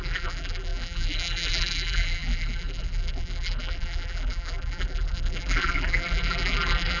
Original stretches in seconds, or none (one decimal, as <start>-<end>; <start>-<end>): none

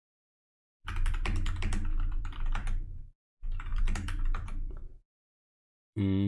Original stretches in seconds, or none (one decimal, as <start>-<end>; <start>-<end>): 0.0-0.5; 3.0-3.7